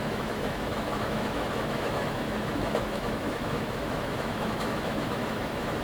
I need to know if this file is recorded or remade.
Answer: remade